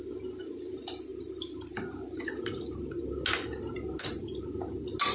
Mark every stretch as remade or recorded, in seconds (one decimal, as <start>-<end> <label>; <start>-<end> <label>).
0.0-1.1 recorded; 1.1-3.1 remade; 3.1-5.1 recorded